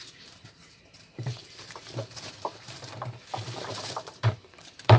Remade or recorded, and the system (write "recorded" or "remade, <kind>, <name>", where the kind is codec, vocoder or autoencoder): remade, vocoder, BigVGAN v2